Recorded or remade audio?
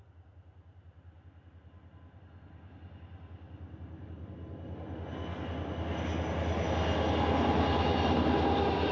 recorded